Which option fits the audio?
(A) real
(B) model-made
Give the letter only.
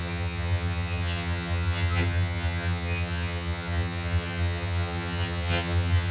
B